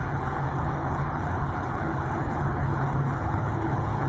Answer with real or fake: fake